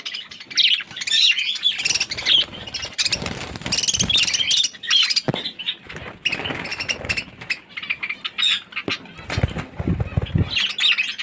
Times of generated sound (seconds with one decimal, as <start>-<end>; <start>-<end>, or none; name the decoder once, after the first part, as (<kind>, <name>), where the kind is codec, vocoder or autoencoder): none